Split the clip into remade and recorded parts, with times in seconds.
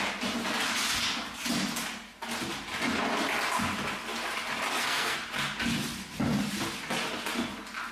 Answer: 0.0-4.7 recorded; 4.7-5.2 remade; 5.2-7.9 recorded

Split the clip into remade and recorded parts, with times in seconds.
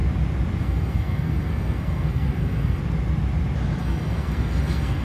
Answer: 0.0-0.6 recorded; 0.6-2.8 remade; 2.8-3.8 recorded; 3.8-5.0 remade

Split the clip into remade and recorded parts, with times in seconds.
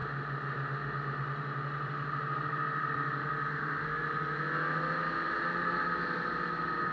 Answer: 0.0-3.5 recorded; 3.5-4.0 remade; 4.0-6.9 recorded